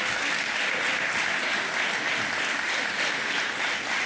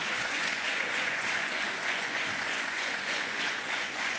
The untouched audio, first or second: first